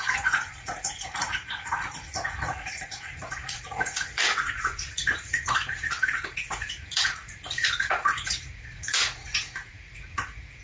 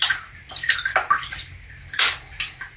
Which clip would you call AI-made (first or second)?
first